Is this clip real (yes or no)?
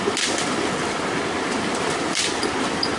no